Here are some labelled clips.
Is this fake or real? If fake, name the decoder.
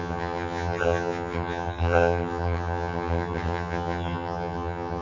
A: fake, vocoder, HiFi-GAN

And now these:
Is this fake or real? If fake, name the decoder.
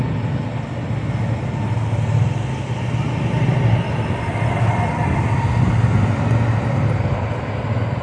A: real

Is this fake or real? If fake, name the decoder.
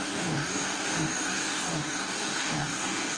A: fake, codec, DAC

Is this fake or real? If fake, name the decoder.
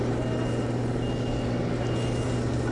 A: real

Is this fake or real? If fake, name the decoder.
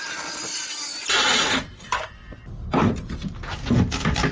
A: real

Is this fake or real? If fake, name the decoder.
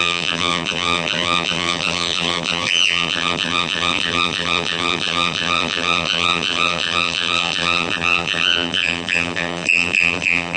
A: fake, vocoder, BigVGAN v2